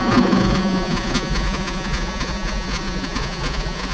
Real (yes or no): no